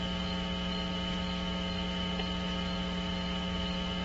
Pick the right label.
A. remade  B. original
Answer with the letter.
B